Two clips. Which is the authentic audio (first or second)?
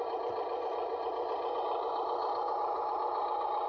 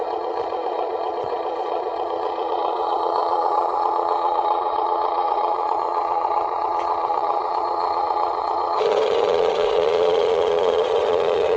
first